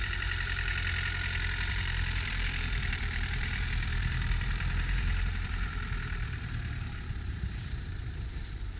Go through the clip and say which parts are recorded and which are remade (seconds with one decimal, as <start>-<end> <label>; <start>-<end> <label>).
0.0-0.7 remade; 0.7-1.7 recorded; 1.7-8.8 remade